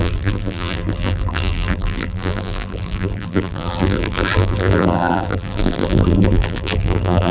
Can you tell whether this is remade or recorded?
remade